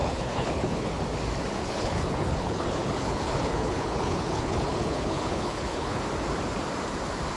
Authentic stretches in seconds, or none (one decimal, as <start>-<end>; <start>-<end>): 1.0-1.6; 6.0-7.4